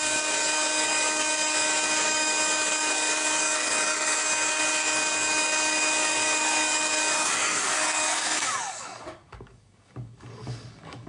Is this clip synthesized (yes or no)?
yes